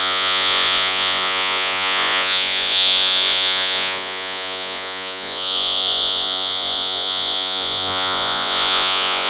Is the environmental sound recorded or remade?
remade